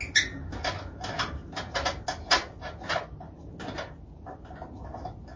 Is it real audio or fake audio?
real